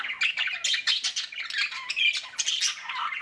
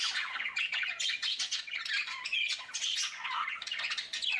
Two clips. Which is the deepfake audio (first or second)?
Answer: second